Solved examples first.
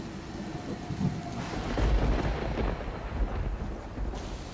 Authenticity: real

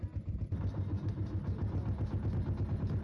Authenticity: real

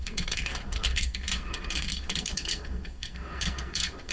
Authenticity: fake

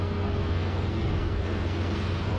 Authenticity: fake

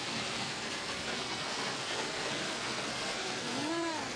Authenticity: fake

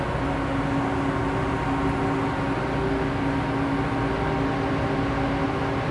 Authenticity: real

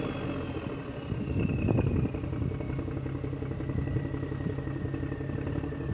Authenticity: real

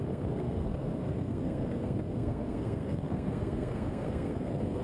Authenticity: fake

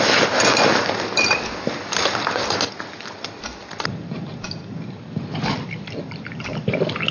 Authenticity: real